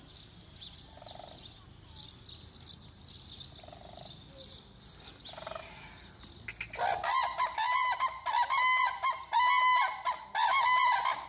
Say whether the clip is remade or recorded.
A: recorded